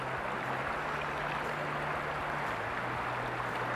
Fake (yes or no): no